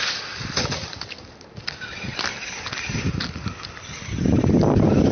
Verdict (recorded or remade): recorded